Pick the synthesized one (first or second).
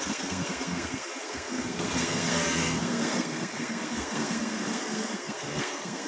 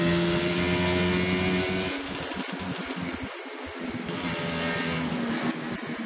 first